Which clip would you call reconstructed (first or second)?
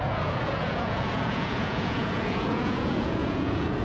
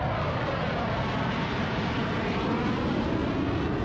first